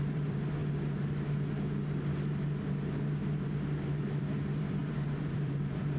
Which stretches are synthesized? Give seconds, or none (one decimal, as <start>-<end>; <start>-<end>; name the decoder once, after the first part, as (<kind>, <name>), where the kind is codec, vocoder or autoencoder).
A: 0.0-0.6 (vocoder, BigVGAN v2); 4.2-6.0